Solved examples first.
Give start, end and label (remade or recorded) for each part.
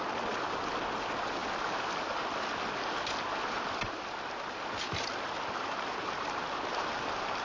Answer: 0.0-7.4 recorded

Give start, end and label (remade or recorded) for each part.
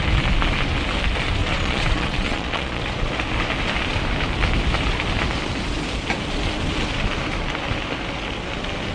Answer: 0.0-1.4 recorded; 1.4-2.8 remade; 2.8-8.9 recorded